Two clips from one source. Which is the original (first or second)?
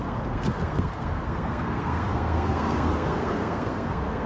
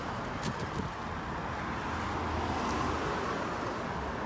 second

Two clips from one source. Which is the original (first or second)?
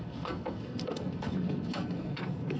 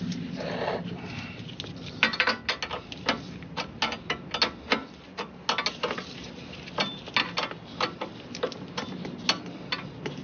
second